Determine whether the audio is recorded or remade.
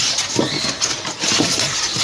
recorded